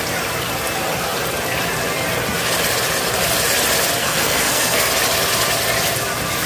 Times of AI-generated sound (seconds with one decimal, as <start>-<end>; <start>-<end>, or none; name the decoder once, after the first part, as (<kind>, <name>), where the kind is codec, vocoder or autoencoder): 4.0-4.9 (codec, SNAC)